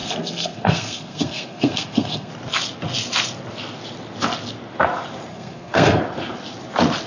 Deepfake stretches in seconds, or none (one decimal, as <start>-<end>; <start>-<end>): 0.0-2.3; 5.3-6.0